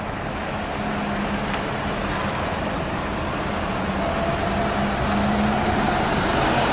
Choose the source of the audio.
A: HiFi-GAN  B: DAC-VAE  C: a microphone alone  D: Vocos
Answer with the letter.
C